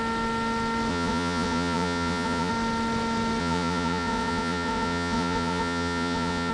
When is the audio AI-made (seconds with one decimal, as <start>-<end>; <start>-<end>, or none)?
0.9-2.5; 3.4-6.5